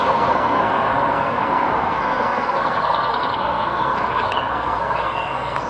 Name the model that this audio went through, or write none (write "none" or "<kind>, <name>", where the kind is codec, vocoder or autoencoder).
codec, SNAC